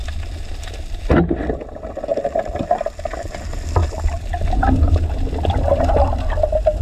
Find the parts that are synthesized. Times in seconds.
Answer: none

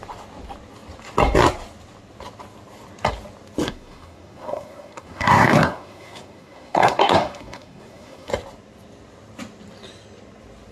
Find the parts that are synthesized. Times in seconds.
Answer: 3.6-8.3 (codec, SNAC)

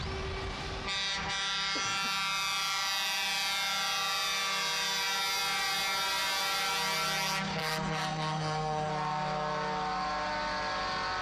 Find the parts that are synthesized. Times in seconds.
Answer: 7.6-8.9 (codec, SNAC)